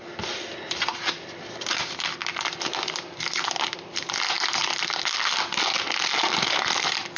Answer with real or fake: real